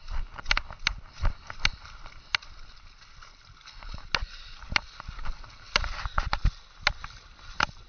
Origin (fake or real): real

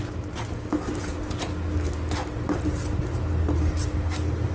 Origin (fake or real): real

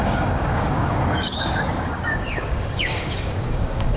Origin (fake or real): fake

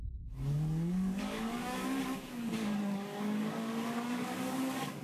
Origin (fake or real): fake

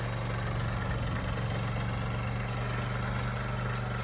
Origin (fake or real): real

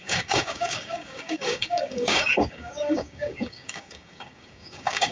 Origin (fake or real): fake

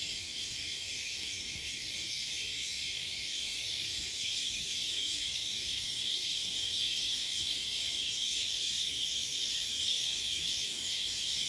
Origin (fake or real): fake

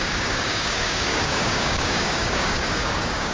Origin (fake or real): fake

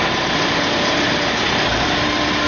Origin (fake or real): real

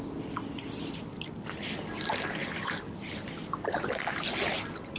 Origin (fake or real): real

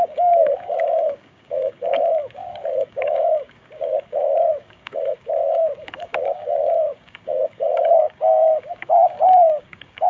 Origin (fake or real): fake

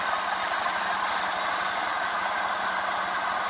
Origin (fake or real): real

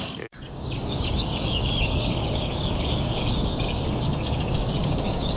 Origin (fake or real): fake